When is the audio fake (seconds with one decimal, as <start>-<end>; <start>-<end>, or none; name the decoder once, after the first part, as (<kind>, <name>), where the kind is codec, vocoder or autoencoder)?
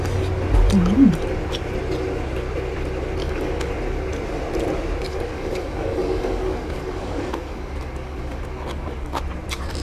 3.2-3.7 (codec, DAC); 5.1-9.2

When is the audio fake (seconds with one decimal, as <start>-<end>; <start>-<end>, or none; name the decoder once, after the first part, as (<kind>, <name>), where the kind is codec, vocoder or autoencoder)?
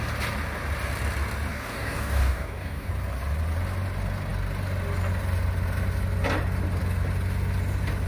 1.5-2.9 (codec, DAC)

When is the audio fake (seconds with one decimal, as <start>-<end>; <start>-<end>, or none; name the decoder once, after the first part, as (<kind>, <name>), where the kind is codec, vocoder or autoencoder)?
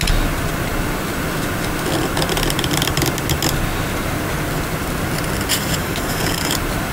5.8-6.5 (codec, DAC)